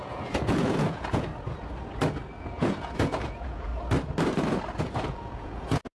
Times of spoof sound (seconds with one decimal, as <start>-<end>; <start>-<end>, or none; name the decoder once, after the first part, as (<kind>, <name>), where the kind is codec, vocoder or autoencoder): 0.0-1.3 (vocoder, Vocos); 2.4-3.7; 4.8-5.9